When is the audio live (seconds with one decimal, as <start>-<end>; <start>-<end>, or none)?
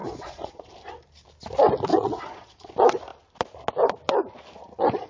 0.7-1.9; 2.7-5.1